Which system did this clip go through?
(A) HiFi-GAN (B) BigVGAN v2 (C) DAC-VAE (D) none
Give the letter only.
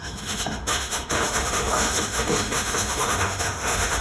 C